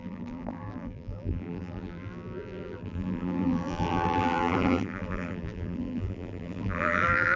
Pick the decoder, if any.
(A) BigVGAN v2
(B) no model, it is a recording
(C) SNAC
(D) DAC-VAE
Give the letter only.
A